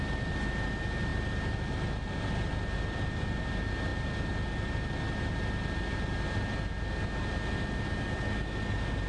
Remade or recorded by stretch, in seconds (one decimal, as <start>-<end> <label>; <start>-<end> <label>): 0.0-9.1 recorded